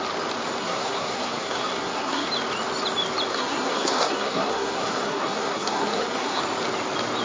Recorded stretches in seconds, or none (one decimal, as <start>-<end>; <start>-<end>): 0.0-0.6; 2.3-3.3; 6.4-7.2